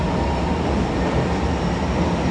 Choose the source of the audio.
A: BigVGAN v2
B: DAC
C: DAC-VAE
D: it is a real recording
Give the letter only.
D